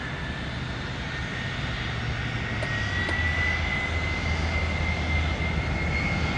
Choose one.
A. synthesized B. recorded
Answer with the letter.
B